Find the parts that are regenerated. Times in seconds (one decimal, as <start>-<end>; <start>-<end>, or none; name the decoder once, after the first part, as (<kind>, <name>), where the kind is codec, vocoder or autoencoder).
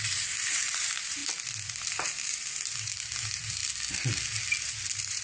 0.0-1.2 (vocoder, BigVGAN v2); 1.7-3.6; 4.7-5.2